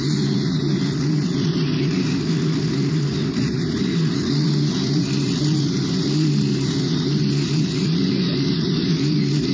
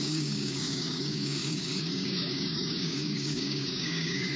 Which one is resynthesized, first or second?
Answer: second